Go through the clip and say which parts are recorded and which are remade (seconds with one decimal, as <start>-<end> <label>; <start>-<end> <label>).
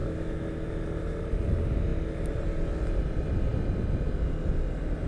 0.0-0.7 remade; 0.7-5.1 recorded